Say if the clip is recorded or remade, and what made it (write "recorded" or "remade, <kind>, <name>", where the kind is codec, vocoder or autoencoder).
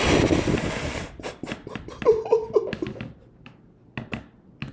recorded